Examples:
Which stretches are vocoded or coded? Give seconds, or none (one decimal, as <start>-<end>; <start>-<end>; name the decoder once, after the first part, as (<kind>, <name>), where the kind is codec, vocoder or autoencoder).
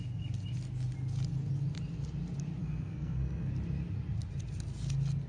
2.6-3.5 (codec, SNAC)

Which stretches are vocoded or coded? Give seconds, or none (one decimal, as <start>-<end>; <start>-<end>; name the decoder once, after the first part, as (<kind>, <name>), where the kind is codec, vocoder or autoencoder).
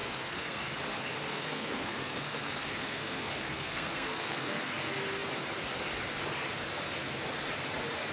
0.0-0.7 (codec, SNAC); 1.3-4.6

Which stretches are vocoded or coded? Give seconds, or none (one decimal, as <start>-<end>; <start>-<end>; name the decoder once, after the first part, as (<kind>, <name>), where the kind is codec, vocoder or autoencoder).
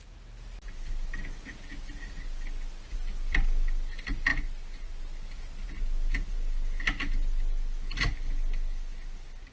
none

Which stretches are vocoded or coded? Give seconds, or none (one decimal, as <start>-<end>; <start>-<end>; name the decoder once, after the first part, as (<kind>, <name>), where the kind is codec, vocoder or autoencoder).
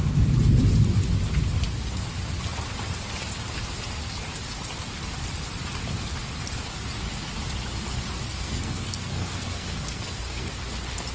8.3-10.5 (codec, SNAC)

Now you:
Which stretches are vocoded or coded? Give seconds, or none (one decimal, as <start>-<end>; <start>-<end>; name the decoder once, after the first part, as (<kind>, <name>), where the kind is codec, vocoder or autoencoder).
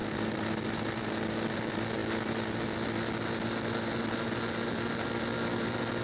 none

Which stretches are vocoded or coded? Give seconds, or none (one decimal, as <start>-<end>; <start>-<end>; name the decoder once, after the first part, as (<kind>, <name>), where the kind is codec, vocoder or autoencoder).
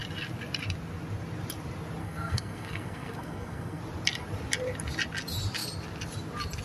2.0-3.8 (codec, SNAC)